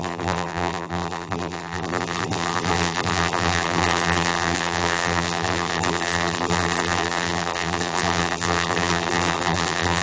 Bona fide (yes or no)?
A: no